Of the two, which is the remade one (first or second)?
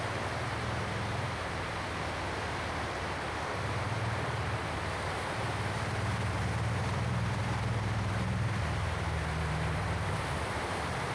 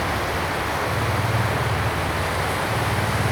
first